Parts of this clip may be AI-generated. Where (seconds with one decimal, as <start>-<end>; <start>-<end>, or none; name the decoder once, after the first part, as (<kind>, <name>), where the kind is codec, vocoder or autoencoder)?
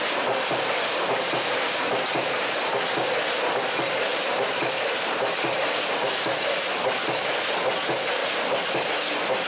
4.1-7.4 (vocoder, BigVGAN v2); 8.2-8.9